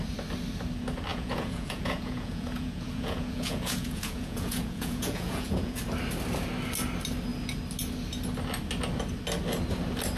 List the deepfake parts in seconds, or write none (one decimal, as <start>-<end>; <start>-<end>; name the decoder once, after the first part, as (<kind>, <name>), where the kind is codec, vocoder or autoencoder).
1.1-5.8 (vocoder, Vocos)